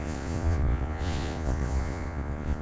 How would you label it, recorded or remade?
remade